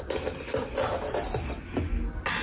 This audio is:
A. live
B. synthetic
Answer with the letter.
A